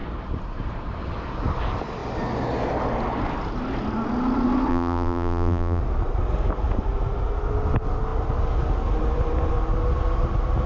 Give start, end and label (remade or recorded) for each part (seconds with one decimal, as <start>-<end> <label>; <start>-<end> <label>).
0.0-4.7 recorded; 4.7-5.8 remade; 5.8-10.7 recorded